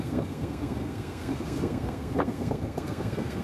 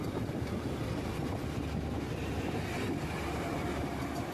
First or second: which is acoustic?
second